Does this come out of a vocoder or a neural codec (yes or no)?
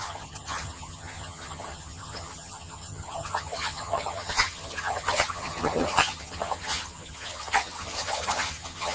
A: yes